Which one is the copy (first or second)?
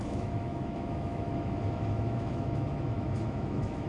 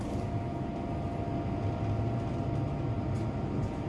first